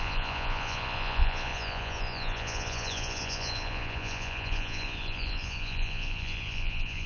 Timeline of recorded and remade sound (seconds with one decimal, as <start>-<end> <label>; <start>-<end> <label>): 0.0-7.1 remade